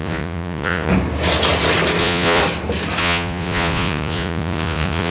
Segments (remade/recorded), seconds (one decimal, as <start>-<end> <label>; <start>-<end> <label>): 0.0-0.9 remade; 0.9-2.0 recorded; 2.0-2.4 remade; 2.4-3.0 recorded; 3.0-5.1 remade